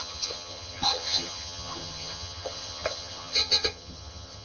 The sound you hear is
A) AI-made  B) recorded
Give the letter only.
A